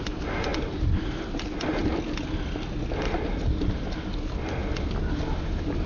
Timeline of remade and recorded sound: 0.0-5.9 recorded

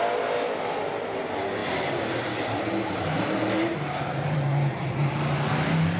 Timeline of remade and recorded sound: 0.0-6.0 recorded

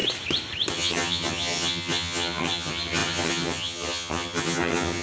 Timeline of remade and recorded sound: 0.0-0.7 recorded; 0.7-5.0 remade

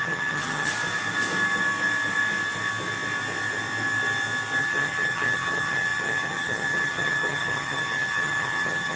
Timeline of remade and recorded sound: 0.0-0.7 remade; 0.7-4.6 recorded; 4.6-9.0 remade

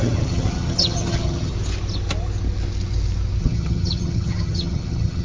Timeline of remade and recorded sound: 0.0-1.5 remade; 1.5-3.4 recorded; 3.4-5.2 remade